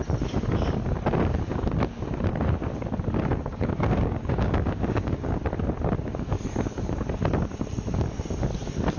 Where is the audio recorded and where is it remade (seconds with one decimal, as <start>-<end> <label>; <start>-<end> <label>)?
0.0-3.5 recorded; 3.5-5.4 remade; 5.4-9.0 recorded